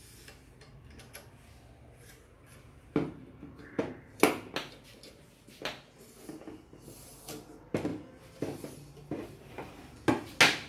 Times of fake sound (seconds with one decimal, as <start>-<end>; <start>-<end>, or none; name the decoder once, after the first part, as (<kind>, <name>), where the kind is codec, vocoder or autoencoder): none